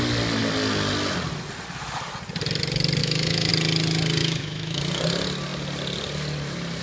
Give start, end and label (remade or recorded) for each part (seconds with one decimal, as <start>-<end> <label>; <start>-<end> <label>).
0.0-3.0 recorded; 3.0-3.5 remade; 3.5-4.2 recorded; 4.2-4.8 remade; 4.8-6.8 recorded